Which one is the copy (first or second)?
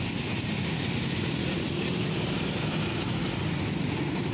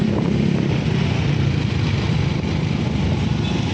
second